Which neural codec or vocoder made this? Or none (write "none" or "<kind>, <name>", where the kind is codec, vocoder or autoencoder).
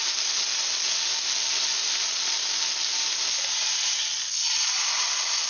none